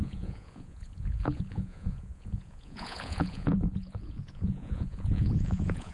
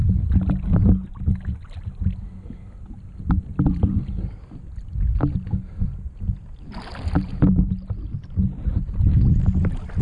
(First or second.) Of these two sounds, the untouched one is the second